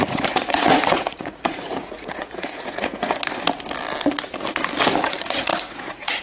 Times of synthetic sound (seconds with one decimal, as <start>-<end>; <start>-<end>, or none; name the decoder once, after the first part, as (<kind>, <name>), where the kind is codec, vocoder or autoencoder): 0.0-3.2 (vocoder, Vocos); 4.9-6.2